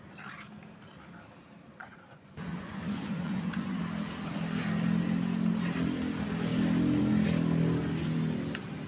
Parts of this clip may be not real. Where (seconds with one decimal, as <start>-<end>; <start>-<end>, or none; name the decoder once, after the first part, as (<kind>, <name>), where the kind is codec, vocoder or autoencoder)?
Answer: 1.8-3.8 (vocoder, Vocos)